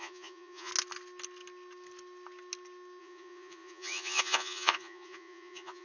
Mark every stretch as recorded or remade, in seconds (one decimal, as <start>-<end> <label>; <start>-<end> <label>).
0.0-0.7 remade; 0.7-3.0 recorded; 3.0-5.8 remade